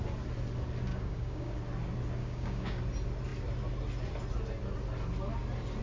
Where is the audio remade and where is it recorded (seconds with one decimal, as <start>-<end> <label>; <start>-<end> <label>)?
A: 0.0-0.9 recorded; 0.9-1.6 remade; 1.6-2.2 recorded; 2.2-2.8 remade; 2.8-5.8 recorded